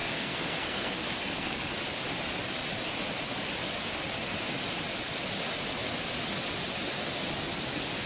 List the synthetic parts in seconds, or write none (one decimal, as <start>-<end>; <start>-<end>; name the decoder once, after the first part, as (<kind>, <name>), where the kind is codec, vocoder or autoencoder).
0.0-1.7 (codec, SNAC)